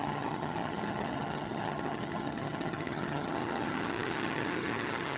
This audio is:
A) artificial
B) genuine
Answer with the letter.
A